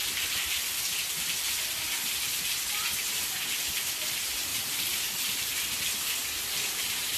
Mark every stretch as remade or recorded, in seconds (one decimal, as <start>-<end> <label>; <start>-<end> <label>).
0.0-4.5 recorded; 4.5-5.5 remade; 5.5-6.2 recorded; 6.2-7.2 remade

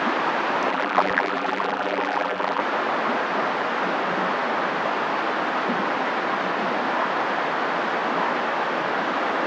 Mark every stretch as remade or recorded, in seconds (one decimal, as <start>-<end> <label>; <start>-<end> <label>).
0.0-0.7 recorded; 0.7-2.6 remade; 2.6-9.5 recorded

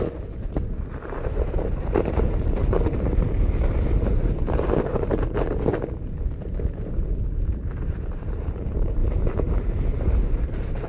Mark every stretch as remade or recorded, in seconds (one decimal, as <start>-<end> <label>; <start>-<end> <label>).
0.0-10.9 remade

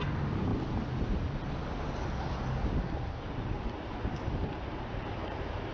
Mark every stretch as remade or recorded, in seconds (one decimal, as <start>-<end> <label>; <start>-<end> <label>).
0.0-0.5 remade; 0.5-3.9 recorded; 3.9-5.7 remade

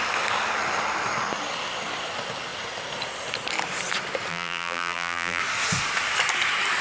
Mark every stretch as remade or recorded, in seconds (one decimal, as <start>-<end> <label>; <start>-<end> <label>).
0.0-4.3 recorded; 4.3-5.4 remade; 5.4-6.8 recorded

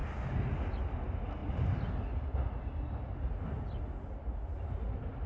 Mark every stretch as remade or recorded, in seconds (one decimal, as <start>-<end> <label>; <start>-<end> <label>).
0.0-5.3 recorded